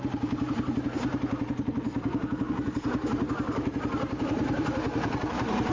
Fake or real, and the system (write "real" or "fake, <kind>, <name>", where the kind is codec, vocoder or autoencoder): fake, vocoder, BigVGAN v2